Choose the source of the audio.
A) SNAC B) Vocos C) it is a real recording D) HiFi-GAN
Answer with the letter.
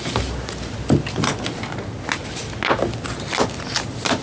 C